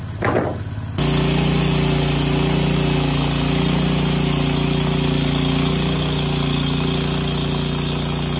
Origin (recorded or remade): recorded